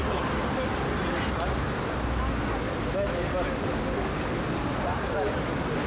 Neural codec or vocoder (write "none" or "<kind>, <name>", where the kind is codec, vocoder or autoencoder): none